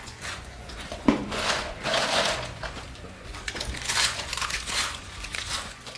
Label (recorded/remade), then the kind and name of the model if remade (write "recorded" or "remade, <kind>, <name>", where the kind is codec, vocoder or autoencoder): remade, vocoder, Vocos